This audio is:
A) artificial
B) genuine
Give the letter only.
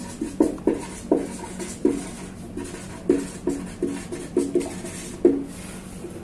B